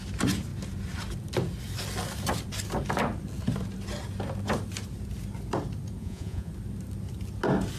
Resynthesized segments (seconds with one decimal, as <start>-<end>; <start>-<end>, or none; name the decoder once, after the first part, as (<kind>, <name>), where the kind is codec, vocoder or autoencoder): 6.0-6.5 (vocoder, Vocos)